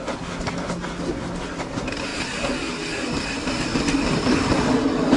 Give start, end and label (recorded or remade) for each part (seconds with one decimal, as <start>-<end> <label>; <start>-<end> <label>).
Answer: 0.0-5.2 recorded